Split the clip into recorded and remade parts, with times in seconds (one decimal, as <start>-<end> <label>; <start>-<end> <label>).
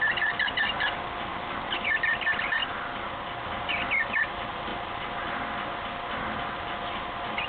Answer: 0.0-1.3 recorded; 1.3-2.0 remade; 2.0-7.5 recorded